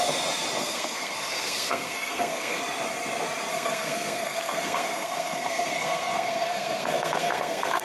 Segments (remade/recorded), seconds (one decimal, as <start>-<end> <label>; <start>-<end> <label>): 0.0-0.6 recorded; 0.6-2.6 remade; 2.6-3.5 recorded; 3.5-7.8 remade